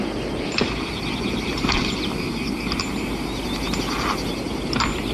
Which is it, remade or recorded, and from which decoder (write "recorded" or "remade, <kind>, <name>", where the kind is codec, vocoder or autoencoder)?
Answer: recorded